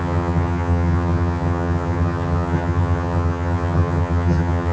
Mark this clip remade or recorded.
remade